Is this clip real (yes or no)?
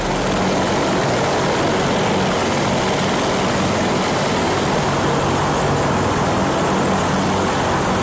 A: yes